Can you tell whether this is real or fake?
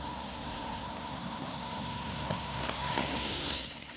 fake